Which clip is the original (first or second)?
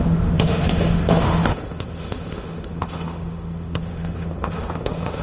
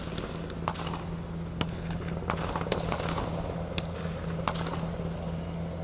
second